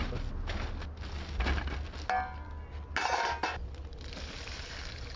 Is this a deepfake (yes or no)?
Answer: no